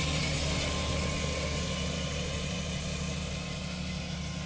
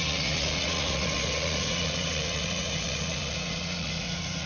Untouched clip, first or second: first